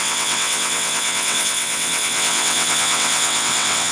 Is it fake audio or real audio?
fake